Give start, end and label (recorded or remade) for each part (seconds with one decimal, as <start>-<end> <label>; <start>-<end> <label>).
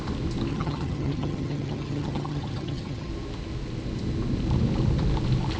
0.0-0.5 recorded; 0.5-3.1 remade; 3.1-5.6 recorded